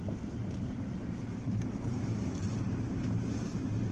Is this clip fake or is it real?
fake